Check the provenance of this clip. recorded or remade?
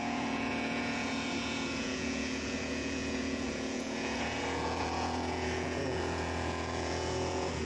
remade